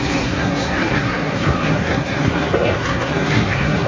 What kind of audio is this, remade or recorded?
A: remade